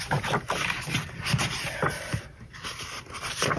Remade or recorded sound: recorded